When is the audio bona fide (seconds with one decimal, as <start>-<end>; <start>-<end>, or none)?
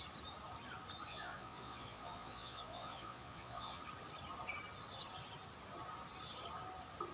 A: 0.0-1.1; 3.8-7.1